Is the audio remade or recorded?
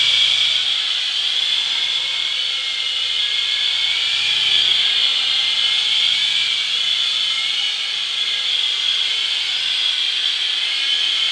recorded